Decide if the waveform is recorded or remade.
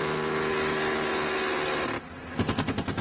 recorded